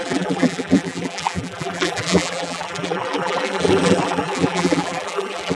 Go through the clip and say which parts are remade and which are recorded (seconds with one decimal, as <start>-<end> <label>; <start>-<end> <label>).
0.0-5.5 remade